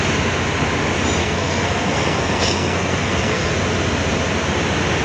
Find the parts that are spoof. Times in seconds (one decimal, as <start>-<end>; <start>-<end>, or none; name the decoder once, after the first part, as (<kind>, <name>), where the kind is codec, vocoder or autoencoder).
1.2-3.5 (codec, SNAC)